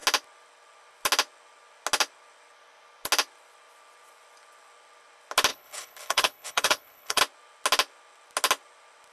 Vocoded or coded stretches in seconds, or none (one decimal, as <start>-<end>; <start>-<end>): 5.5-7.2